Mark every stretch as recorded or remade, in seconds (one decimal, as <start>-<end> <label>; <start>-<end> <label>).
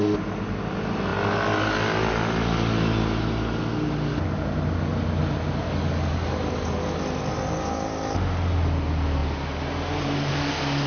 0.0-10.9 recorded